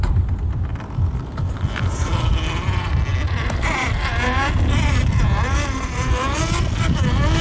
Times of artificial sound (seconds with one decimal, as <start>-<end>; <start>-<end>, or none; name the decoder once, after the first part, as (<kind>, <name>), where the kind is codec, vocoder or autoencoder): none